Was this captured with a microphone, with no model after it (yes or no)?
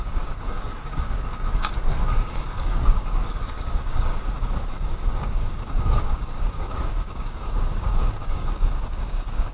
no